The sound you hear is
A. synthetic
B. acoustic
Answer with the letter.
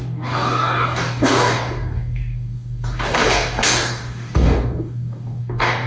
A